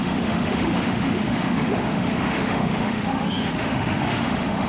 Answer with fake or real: fake